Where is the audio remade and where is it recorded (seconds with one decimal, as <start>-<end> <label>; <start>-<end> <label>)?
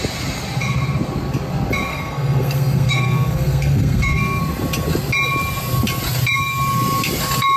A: 0.0-1.9 recorded; 1.9-4.4 remade; 4.4-7.6 recorded